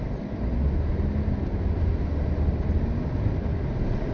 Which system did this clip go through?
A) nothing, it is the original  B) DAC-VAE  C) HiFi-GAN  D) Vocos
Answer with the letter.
A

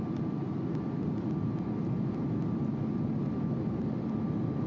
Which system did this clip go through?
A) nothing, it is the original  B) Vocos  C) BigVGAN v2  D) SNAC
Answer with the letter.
A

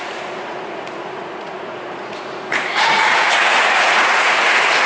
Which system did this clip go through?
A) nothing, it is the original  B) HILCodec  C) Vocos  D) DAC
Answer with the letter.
C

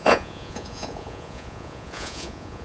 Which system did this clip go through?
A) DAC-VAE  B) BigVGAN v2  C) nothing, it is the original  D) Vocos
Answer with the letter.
D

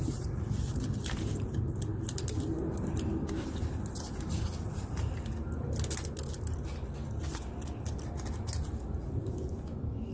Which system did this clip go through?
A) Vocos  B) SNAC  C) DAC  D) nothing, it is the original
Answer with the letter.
D